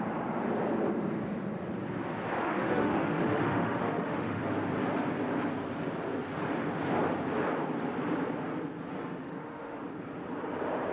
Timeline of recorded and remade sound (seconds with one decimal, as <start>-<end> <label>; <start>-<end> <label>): 0.0-2.4 recorded; 2.4-4.4 remade; 4.4-9.2 recorded; 9.2-9.8 remade; 9.8-10.9 recorded